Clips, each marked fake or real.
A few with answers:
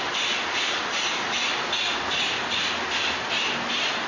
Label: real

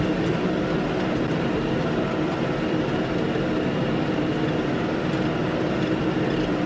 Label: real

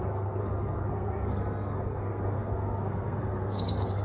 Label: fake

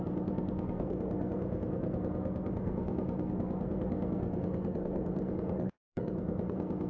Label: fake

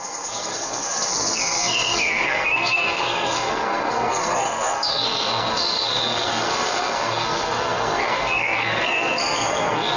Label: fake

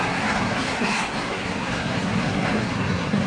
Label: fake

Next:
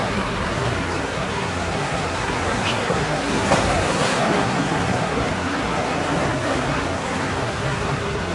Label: fake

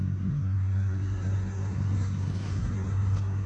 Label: fake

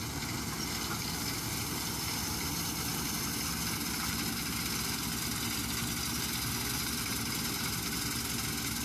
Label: real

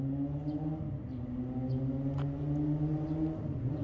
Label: real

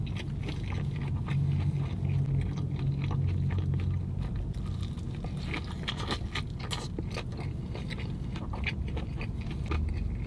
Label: real